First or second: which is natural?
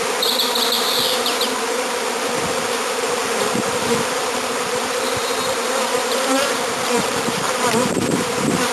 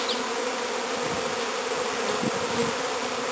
second